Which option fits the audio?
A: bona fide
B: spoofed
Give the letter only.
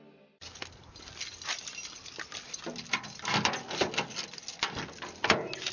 A